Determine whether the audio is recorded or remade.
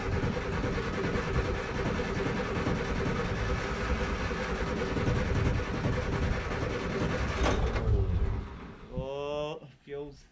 recorded